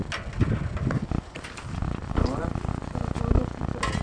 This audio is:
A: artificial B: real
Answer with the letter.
B